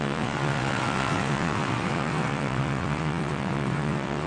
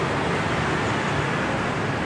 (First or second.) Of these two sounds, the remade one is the first